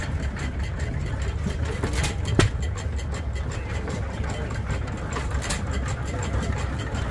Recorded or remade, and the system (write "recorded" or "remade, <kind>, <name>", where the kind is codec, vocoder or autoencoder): recorded